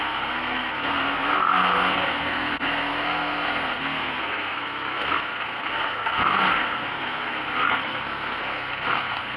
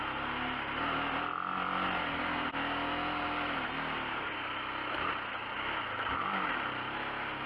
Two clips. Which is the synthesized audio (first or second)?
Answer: first